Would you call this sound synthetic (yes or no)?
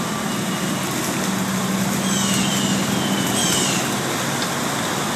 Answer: no